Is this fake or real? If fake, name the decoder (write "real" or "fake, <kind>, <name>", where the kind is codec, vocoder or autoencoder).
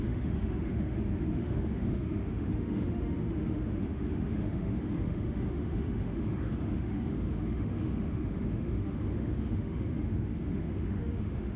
fake, autoencoder, DAC-VAE